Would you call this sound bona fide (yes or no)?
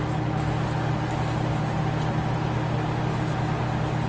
yes